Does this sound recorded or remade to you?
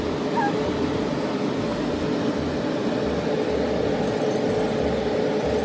recorded